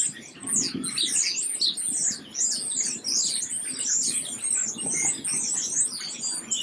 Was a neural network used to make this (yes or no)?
no